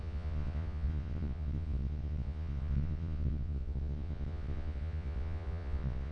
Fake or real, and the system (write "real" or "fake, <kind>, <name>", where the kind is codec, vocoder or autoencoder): fake, vocoder, Vocos